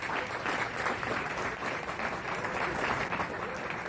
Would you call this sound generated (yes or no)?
no